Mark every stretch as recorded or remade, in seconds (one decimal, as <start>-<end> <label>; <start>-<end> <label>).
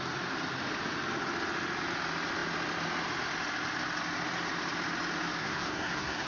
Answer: 0.0-5.4 recorded; 5.4-6.3 remade